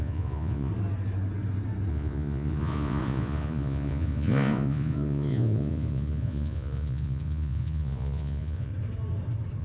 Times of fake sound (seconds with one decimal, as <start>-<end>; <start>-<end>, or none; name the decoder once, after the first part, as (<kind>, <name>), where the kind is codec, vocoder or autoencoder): 0.0-0.7 (vocoder, Vocos); 1.9-8.7